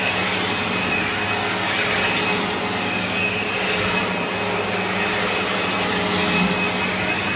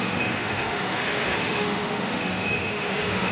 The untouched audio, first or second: first